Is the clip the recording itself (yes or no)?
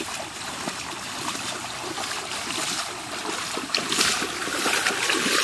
yes